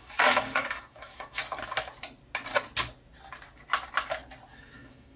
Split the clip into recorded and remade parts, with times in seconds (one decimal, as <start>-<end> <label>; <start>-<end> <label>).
0.0-1.4 remade; 1.4-4.5 recorded; 4.5-5.2 remade